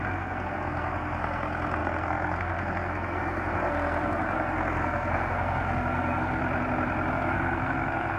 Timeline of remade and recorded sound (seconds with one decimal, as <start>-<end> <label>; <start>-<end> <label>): 0.0-6.4 remade; 6.4-7.1 recorded; 7.1-8.2 remade